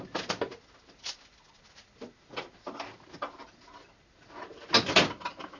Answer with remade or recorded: recorded